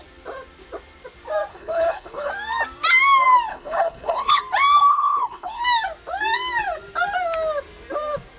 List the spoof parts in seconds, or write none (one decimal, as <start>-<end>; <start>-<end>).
1.5-2.3; 3.5-4.4; 4.9-5.6